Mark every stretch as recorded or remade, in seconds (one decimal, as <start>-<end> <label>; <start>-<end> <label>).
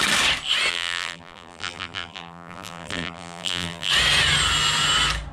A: 0.0-0.7 recorded; 0.7-3.9 remade; 3.9-5.3 recorded